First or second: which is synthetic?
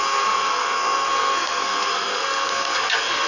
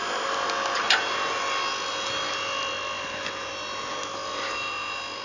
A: first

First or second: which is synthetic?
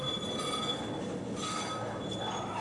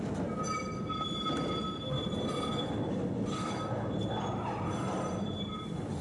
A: second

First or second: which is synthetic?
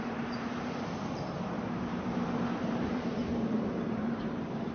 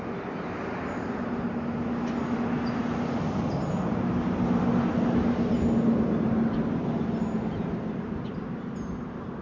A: first